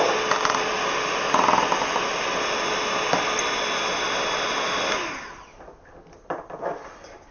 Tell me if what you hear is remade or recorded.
recorded